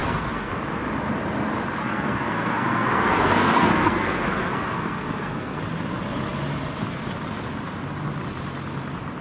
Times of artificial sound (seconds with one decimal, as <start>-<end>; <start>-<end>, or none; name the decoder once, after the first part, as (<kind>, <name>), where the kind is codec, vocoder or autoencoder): 0.0-0.5 (codec, SNAC); 1.8-5.6